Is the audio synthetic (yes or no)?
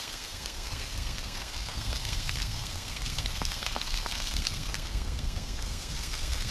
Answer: yes